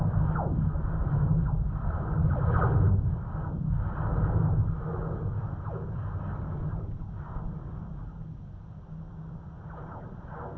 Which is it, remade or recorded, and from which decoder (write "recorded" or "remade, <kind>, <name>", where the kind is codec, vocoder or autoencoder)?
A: recorded